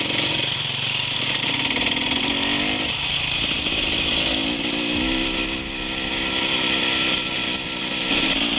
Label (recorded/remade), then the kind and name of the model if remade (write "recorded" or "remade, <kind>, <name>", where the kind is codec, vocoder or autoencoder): recorded